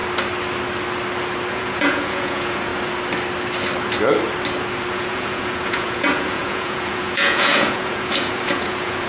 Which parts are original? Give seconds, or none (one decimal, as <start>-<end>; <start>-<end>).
0.0-1.5; 2.7-4.9